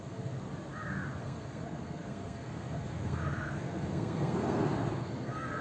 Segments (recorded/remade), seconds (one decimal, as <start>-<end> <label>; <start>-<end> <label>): 0.0-0.5 remade; 0.5-1.2 recorded; 1.2-5.6 remade